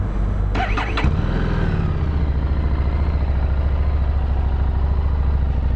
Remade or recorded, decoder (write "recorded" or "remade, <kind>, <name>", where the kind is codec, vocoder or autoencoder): recorded